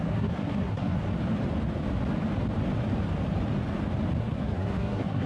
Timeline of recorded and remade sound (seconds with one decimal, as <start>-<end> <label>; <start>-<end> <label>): 0.0-1.1 remade; 1.1-4.2 recorded; 4.2-5.3 remade